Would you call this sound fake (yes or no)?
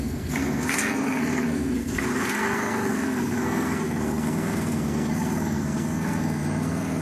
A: yes